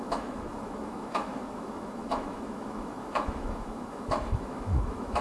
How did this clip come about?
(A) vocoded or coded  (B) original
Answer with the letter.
A